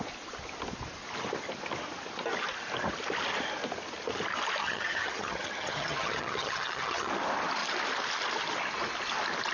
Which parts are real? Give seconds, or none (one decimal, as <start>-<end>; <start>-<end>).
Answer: 0.0-4.6; 7.1-9.5